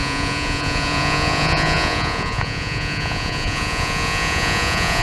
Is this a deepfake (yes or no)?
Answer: yes